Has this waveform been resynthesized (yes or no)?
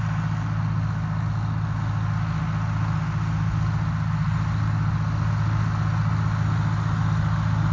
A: no